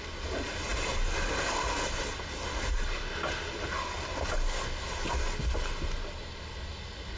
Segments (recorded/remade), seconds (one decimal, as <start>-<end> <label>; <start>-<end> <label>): 0.0-7.2 recorded